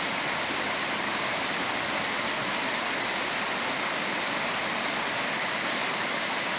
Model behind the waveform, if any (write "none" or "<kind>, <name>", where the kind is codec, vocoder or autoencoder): none